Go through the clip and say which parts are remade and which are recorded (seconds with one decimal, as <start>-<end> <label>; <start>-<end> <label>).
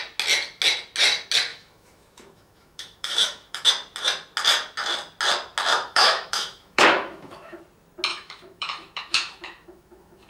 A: 0.0-1.5 recorded; 1.5-3.7 remade; 3.7-5.7 recorded; 5.7-7.6 remade; 7.6-8.1 recorded; 8.1-10.3 remade